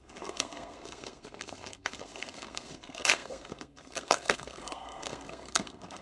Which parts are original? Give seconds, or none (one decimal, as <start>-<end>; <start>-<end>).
none

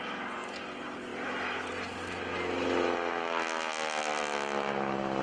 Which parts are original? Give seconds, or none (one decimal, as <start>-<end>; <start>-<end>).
0.0-5.2

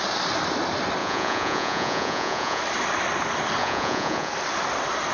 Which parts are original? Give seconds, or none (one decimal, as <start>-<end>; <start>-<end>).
0.0-1.0; 2.6-3.6; 4.3-5.1

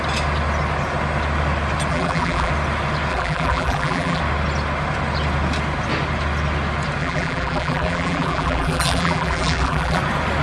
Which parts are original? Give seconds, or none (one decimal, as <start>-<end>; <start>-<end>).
0.0-1.9; 2.5-3.1; 4.2-7.0; 10.0-10.4

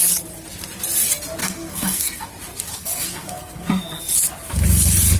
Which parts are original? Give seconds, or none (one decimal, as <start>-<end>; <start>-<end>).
0.0-1.4; 2.3-2.7; 4.0-5.2

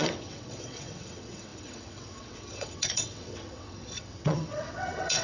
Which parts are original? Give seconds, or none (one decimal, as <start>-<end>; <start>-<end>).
none

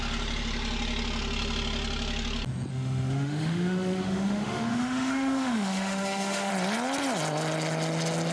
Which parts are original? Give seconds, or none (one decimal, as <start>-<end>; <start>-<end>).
0.0-2.7; 6.5-8.3

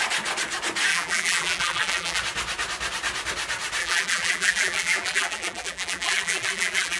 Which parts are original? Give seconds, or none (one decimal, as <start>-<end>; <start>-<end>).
0.0-0.9; 2.2-3.8